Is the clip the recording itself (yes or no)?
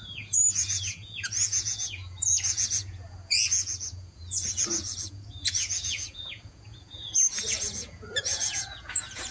no